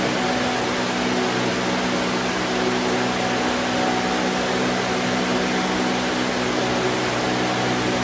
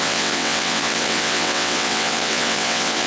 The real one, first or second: first